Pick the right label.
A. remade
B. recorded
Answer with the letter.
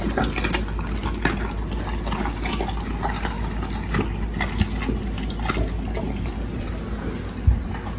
B